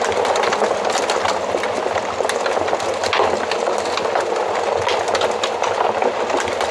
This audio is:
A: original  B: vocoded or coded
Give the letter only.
A